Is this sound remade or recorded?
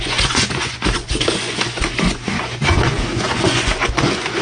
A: remade